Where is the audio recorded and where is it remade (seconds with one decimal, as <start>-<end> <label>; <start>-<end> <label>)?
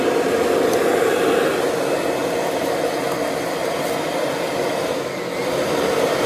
0.0-6.3 recorded